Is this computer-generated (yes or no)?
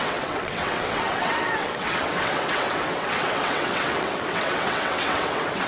yes